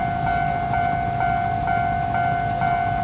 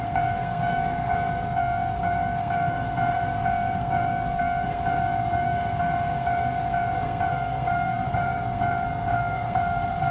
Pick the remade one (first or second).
second